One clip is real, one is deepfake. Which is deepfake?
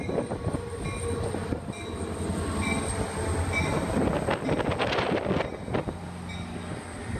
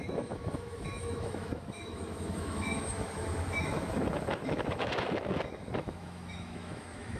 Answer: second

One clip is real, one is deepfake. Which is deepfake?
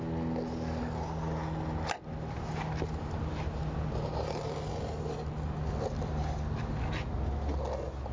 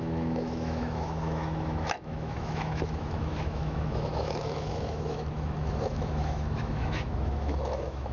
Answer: second